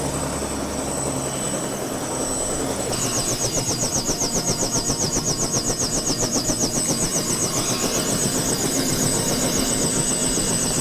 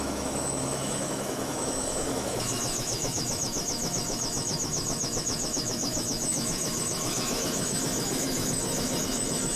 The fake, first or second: second